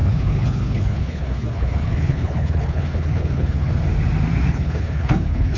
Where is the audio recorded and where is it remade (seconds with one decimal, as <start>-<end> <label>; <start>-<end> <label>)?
0.0-3.7 remade; 3.7-4.5 recorded; 4.5-5.6 remade